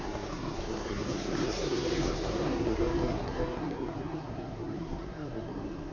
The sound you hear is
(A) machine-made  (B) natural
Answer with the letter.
A